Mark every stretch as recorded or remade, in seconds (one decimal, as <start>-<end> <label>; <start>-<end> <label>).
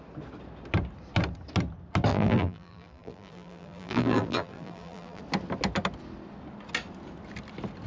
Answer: 0.0-2.1 recorded; 2.1-5.2 remade; 5.2-7.9 recorded